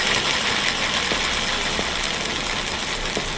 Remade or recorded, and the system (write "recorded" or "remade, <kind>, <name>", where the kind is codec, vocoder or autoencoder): recorded